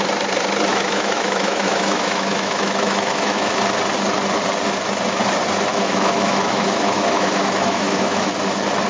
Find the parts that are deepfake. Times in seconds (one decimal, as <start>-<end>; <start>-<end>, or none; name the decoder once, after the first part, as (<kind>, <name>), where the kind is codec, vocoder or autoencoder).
0.7-3.6 (autoencoder, DAC-VAE); 5.7-8.4